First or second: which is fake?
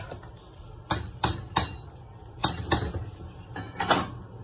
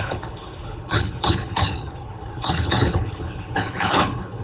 second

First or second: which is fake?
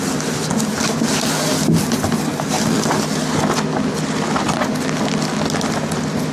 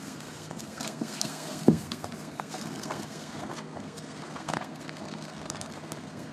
second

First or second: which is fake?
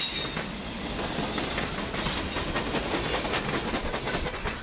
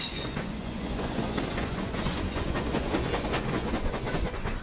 second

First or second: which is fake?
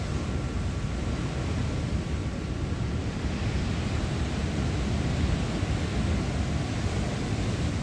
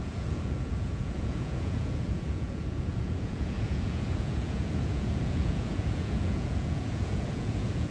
second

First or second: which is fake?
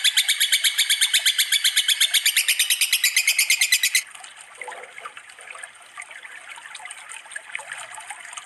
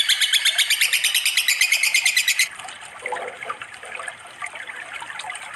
second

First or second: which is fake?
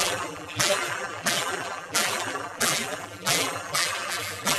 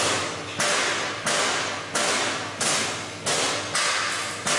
first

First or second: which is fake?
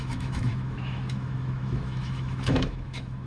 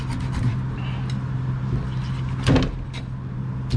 first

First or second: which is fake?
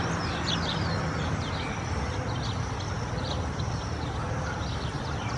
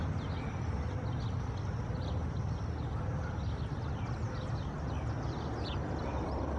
first